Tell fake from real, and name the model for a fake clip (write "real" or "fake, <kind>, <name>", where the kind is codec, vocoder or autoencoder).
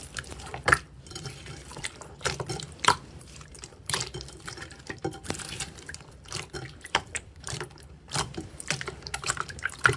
fake, vocoder, BigVGAN v2